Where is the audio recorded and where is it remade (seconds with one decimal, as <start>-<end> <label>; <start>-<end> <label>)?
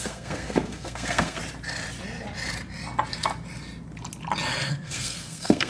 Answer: 0.0-1.4 remade; 1.4-4.7 recorded; 4.7-5.7 remade